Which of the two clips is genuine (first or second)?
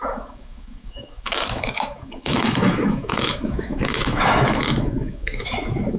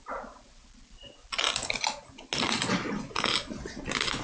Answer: second